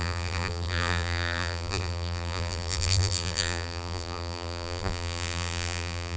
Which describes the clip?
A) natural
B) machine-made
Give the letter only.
B